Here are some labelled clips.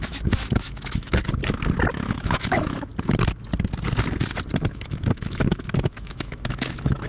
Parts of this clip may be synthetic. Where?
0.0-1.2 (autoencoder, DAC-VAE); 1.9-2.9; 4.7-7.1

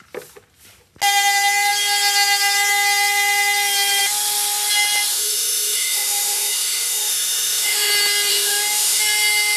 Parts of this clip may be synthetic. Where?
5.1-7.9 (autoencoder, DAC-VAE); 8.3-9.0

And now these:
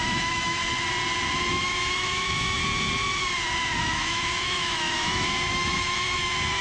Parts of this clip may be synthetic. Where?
0.0-0.6 (autoencoder, DAC-VAE); 1.5-2.6; 3.8-6.6

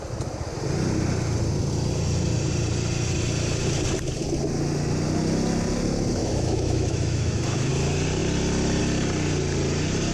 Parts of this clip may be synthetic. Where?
6.2-7.7 (autoencoder, DAC-VAE)

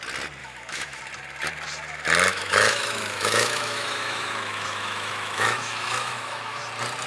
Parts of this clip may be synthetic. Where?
0.4-1.0 (autoencoder, DAC-VAE); 2.3-6.6

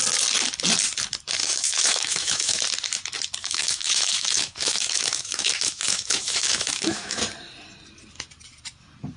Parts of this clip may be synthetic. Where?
1.4-2.6 (autoencoder, DAC-VAE); 3.4-7.2

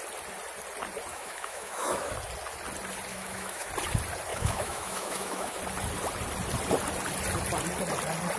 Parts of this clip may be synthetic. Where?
1.1-2.1 (autoencoder, DAC-VAE); 3.1-3.7; 4.3-5.6